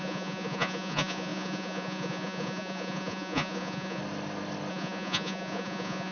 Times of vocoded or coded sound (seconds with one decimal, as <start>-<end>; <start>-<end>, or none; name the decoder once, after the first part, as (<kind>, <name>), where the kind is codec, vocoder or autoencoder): 0.0-4.0 (vocoder, Vocos); 4.7-6.1